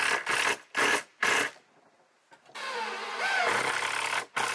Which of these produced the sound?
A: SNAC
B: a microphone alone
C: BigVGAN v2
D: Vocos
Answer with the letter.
B